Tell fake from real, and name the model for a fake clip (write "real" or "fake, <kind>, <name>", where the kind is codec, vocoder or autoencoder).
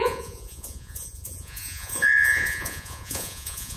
fake, vocoder, Vocos